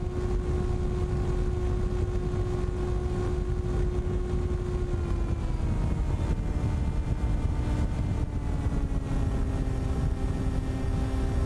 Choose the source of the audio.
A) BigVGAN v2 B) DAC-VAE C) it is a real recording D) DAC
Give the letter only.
C